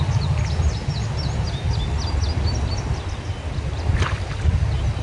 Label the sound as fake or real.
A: real